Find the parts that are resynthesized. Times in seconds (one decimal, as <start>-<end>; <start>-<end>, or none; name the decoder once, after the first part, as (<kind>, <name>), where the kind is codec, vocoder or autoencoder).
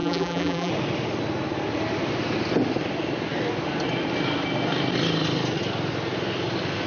0.0-0.7 (vocoder, BigVGAN v2)